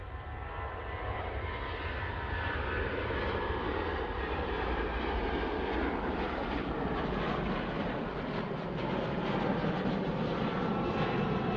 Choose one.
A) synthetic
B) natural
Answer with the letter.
B